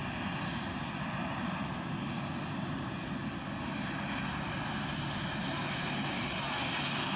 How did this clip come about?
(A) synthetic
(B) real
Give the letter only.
B